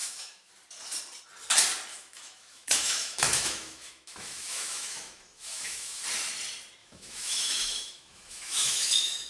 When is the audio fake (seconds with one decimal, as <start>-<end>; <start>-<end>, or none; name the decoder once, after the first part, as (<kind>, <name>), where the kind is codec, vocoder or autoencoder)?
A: 0.0-0.5 (autoencoder, DAC-VAE); 1.9-6.0; 6.8-9.3